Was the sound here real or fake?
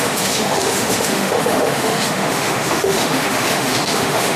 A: fake